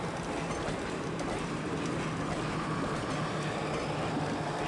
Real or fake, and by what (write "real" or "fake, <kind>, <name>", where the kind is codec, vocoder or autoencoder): real